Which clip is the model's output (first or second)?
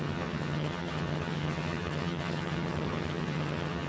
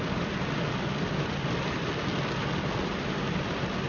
first